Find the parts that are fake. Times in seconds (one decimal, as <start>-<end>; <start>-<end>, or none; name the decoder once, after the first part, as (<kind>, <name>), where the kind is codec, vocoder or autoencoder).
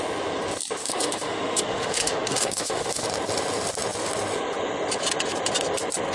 0.8-3.0 (autoencoder, DAC-VAE)